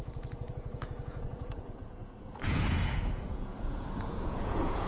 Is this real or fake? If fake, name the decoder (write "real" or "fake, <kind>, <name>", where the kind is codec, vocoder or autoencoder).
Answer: fake, vocoder, Vocos